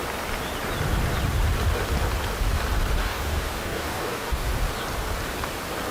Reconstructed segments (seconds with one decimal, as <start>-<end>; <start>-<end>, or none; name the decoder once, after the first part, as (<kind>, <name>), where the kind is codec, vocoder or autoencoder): 3.0-4.5 (codec, DAC)